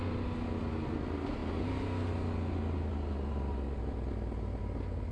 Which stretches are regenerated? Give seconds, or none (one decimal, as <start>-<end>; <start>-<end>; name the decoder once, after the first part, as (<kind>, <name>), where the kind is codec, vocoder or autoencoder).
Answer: none